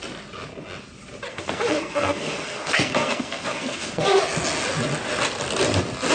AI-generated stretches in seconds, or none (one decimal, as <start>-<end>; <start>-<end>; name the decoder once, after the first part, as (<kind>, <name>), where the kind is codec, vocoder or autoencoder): 1.3-4.2 (codec, SNAC)